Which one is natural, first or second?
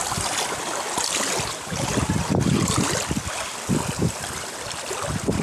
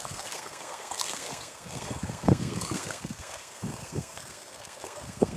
first